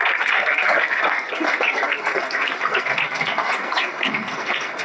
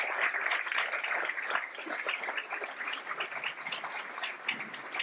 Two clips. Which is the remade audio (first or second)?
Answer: first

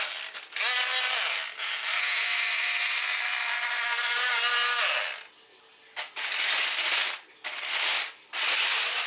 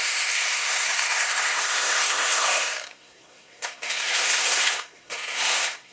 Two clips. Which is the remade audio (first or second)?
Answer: second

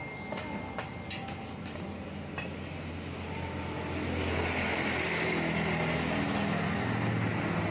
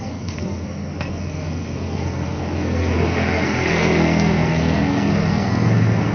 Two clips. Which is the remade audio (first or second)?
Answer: second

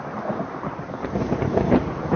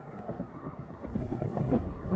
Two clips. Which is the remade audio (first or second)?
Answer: second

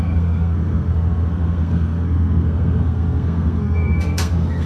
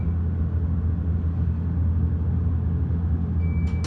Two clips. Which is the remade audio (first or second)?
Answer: first